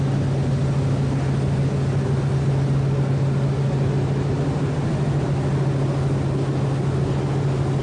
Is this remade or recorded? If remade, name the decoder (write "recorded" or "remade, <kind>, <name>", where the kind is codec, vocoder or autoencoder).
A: recorded